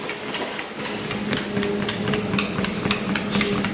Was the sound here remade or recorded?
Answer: recorded